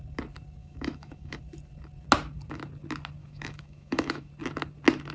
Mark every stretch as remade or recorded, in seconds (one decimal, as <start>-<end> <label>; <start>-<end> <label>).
0.0-0.6 recorded; 0.6-1.4 remade; 1.4-3.2 recorded; 3.2-4.3 remade; 4.3-5.1 recorded